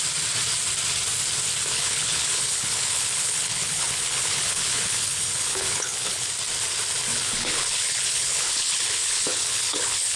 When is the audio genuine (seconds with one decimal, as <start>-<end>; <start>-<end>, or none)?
0.0-1.7; 6.3-7.1